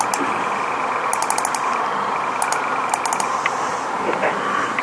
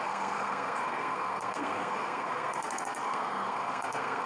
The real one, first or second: first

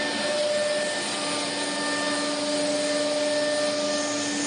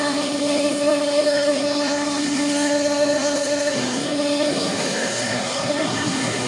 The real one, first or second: first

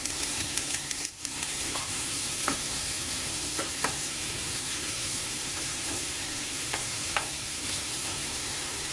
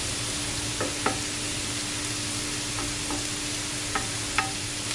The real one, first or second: second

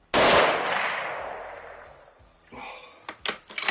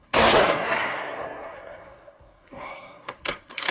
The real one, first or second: first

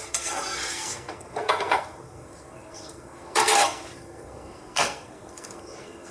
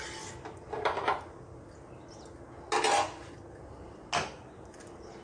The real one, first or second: second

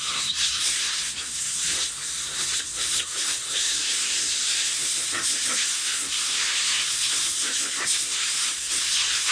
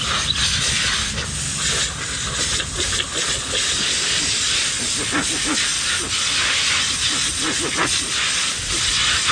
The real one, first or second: second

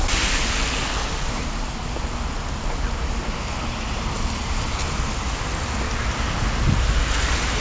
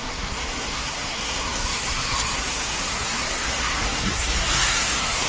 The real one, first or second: first